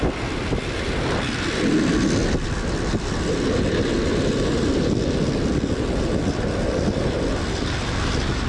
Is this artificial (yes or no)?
no